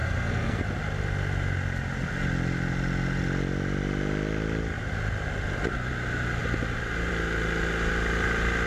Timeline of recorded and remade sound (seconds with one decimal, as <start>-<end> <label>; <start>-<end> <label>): 0.0-0.6 remade; 0.6-8.7 recorded